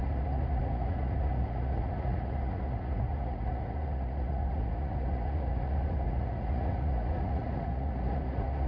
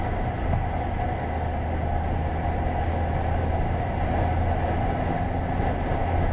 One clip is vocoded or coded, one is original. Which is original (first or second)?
second